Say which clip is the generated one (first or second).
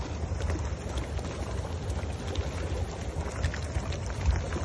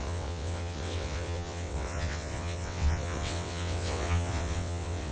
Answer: second